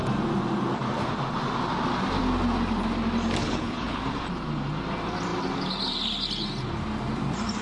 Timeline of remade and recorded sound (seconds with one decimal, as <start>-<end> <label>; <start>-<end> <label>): 0.0-3.4 recorded; 3.4-4.0 remade; 4.0-7.6 recorded